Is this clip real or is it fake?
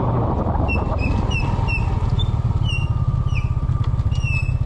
real